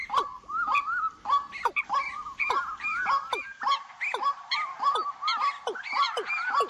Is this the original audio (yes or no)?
yes